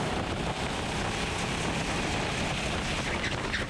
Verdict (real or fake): real